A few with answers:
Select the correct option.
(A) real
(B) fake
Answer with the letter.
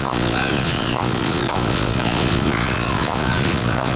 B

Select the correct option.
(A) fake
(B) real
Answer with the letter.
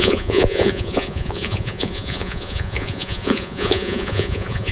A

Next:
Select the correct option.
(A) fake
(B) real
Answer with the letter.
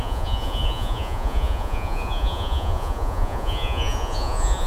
A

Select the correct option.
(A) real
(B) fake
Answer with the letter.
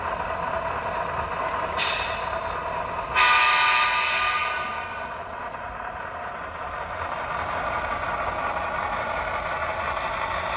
A